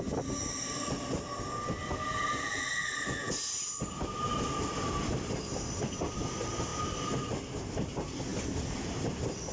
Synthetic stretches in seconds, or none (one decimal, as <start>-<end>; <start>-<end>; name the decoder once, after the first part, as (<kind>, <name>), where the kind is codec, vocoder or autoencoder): none